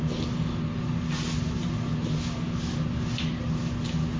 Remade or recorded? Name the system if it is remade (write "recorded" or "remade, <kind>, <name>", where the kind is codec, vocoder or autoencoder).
recorded